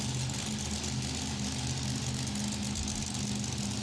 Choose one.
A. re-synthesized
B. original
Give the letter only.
B